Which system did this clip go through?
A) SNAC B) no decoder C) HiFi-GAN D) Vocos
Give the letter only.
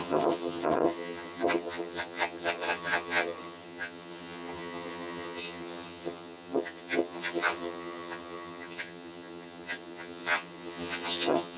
C